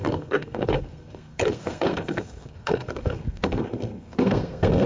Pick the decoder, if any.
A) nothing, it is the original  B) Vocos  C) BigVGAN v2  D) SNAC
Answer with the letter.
D